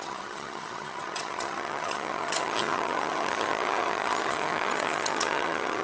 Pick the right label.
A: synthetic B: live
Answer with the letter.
A